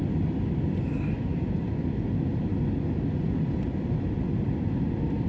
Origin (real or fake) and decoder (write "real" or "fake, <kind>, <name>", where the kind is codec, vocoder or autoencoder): real